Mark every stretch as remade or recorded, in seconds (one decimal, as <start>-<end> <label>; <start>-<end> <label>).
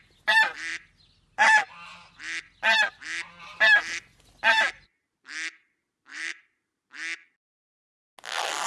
0.0-6.1 recorded; 6.1-6.7 remade; 6.7-8.7 recorded